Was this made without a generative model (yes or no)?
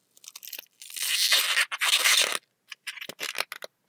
yes